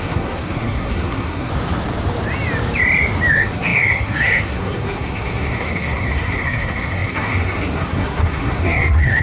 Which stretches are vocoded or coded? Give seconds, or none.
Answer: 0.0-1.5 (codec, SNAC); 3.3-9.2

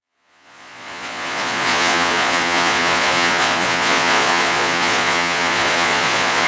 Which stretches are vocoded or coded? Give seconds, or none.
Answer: 0.0-6.5 (vocoder, Vocos)